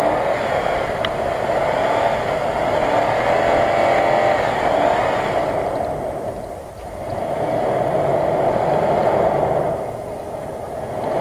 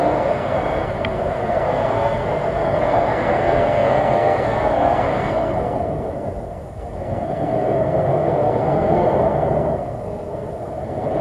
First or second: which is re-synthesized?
second